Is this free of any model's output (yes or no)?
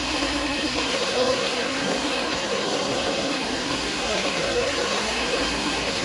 no